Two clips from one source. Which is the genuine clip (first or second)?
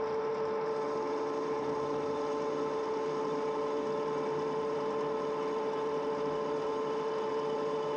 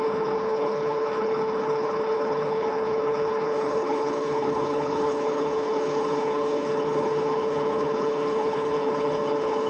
first